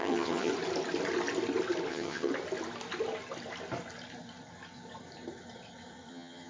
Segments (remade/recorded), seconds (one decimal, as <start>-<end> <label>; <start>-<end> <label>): 0.0-0.5 remade; 0.5-1.9 recorded; 1.9-2.3 remade; 2.3-6.1 recorded; 6.1-6.5 remade